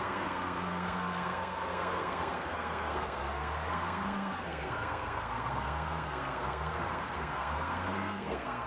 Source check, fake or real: fake